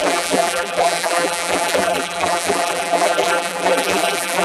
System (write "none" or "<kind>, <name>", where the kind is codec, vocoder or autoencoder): vocoder, BigVGAN v2